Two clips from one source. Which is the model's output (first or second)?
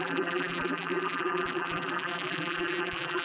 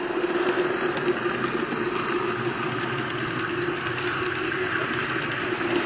first